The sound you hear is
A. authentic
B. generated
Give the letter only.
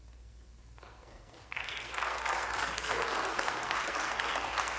B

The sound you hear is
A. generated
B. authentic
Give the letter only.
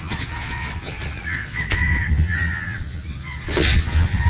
A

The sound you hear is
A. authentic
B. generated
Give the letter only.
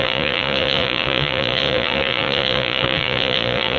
B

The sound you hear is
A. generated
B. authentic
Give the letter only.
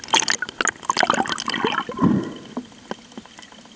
B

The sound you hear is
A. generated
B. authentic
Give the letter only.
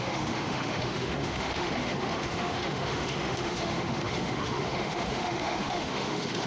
A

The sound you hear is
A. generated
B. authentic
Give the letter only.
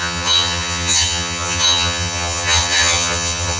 A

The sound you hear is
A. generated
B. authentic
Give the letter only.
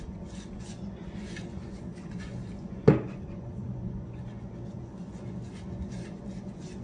A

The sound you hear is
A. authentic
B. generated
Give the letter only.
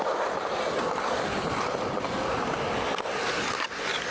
A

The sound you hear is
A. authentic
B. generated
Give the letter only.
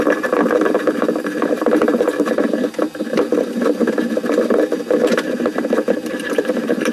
B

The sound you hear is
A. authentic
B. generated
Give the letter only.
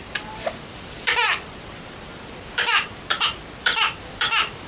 B